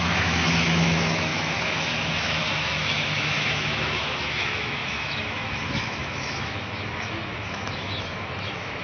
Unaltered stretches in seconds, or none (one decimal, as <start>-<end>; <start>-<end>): none